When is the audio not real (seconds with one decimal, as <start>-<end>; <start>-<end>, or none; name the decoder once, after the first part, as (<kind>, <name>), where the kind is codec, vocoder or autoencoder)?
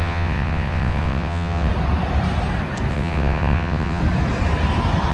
0.0-1.7 (vocoder, WaveNeXt); 2.9-4.0